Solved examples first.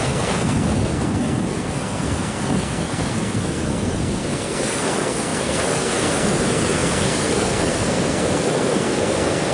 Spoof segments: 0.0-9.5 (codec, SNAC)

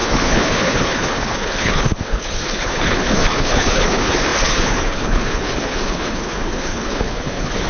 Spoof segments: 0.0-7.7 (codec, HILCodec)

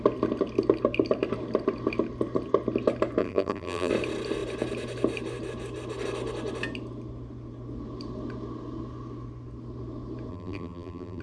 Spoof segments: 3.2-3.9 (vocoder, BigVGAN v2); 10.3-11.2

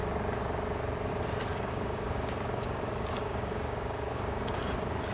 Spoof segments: 1.5-4.6 (codec, DAC)

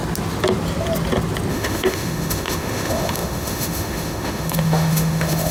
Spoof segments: 1.5-5.5 (autoencoder, DAC-VAE)

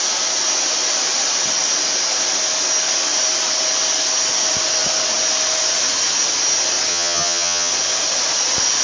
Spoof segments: 6.9-7.7 (vocoder, HiFi-GAN)

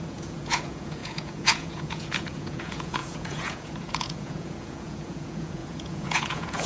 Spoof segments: 0.0-6.7 (vocoder, Vocos)